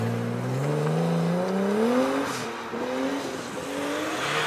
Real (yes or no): yes